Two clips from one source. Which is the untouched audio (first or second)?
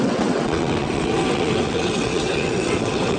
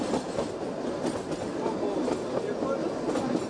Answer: second